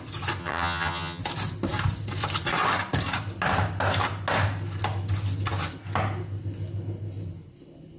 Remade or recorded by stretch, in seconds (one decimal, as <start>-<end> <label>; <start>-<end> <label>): 0.0-0.4 recorded; 0.4-1.2 remade; 1.2-8.0 recorded